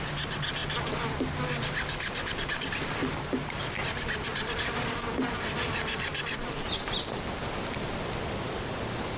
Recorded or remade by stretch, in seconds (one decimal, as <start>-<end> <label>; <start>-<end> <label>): 0.0-3.0 recorded; 3.0-3.7 remade; 3.7-4.3 recorded; 4.3-7.0 remade; 7.0-9.2 recorded